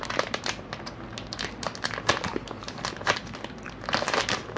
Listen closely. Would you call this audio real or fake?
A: real